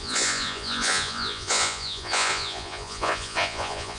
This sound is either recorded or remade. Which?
remade